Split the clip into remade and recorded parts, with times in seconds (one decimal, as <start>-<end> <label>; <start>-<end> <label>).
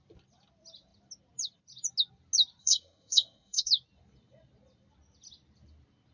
0.0-2.6 recorded; 2.6-3.7 remade; 3.7-6.1 recorded